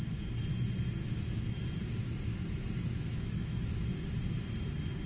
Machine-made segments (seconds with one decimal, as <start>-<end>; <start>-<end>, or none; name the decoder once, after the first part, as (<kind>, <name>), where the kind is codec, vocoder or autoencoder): 1.0-1.5 (autoencoder, DAC-VAE); 2.3-4.1